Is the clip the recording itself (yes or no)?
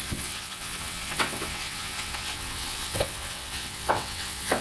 no